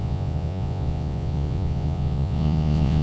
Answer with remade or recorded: remade